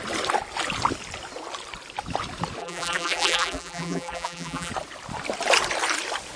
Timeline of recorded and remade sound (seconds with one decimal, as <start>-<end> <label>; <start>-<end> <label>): 0.0-2.6 recorded; 2.6-4.7 remade; 4.7-6.4 recorded